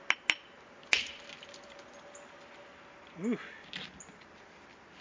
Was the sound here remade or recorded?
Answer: recorded